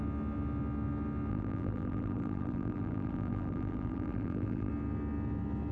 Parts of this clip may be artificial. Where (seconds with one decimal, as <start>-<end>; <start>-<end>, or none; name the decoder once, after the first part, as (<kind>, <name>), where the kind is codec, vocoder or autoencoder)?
1.3-4.7 (vocoder, BigVGAN v2)